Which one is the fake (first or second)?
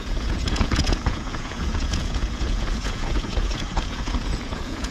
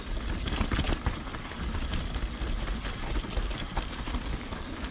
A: first